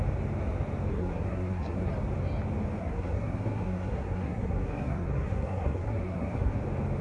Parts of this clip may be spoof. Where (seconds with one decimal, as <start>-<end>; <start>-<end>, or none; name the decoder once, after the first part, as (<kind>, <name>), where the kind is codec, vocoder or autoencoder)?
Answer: 0.9-1.9 (codec, SNAC); 2.8-6.6